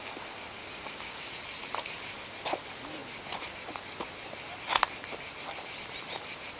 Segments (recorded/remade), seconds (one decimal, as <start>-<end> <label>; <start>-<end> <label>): 0.0-0.6 recorded; 0.6-1.3 remade; 1.3-6.6 recorded